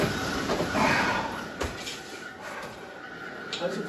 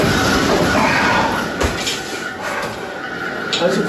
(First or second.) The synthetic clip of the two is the first